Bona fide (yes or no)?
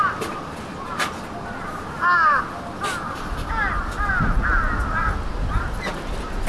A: yes